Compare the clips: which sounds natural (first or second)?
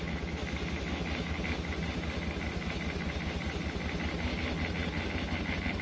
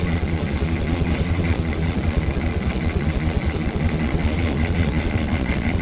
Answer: first